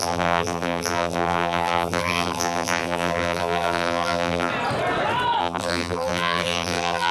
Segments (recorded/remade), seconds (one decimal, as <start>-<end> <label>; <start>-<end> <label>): 0.0-4.5 remade; 4.5-5.4 recorded; 5.4-7.1 remade